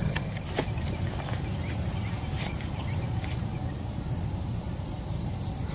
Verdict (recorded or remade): remade